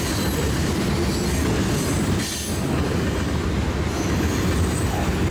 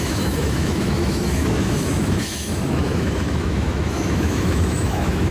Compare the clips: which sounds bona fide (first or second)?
first